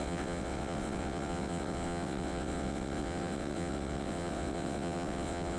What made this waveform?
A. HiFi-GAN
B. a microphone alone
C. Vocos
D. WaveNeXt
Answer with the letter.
D